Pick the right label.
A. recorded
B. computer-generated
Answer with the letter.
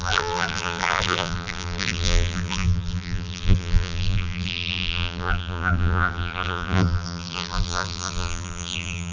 B